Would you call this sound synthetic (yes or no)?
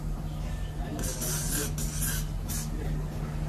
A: no